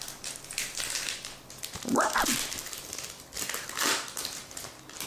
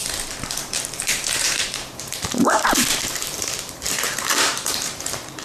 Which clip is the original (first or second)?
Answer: first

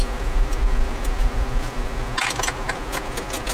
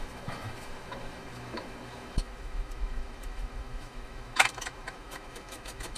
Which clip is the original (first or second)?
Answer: first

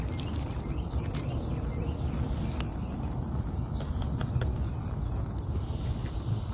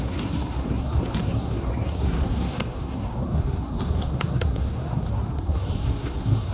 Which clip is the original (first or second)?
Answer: first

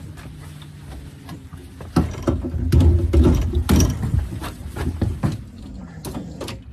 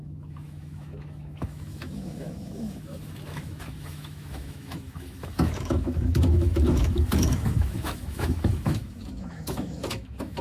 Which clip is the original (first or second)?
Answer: first